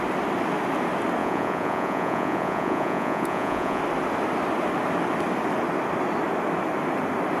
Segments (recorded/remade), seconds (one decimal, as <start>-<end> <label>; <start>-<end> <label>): 0.0-1.2 recorded; 1.2-3.8 remade; 3.8-7.4 recorded